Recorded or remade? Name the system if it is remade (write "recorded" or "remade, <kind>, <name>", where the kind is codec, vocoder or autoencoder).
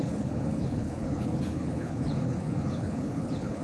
remade, codec, HILCodec